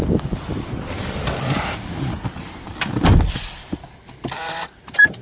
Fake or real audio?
fake